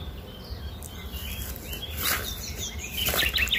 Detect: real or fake real